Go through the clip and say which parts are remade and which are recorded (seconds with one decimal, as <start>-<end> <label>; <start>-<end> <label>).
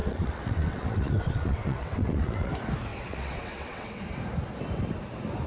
0.0-2.5 remade; 2.5-2.9 recorded; 2.9-4.0 remade; 4.0-5.5 recorded